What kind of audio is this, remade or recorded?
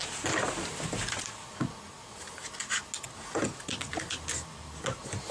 recorded